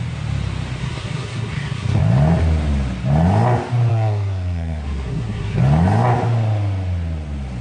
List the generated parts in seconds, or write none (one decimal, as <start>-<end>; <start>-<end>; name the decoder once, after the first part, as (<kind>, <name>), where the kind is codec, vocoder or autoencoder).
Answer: 0.8-2.0 (codec, SNAC); 3.9-5.6